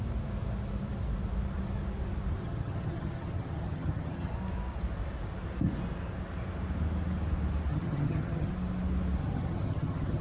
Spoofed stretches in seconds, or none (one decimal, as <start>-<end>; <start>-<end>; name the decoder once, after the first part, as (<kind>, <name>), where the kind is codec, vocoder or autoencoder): 2.4-4.3 (vocoder, HiFi-GAN); 7.7-8.5; 9.2-10.2